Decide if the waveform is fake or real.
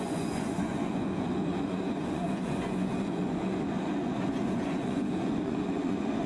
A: fake